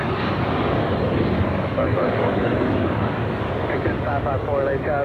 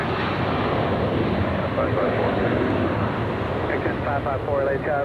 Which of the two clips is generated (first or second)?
first